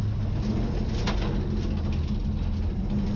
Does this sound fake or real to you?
real